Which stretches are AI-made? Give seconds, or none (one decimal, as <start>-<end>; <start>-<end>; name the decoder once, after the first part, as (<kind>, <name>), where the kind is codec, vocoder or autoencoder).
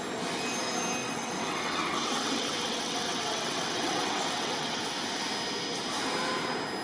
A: 1.0-4.8 (vocoder, WaveNeXt)